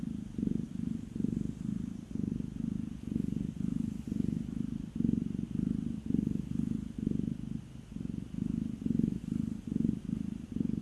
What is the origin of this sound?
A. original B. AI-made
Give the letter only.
A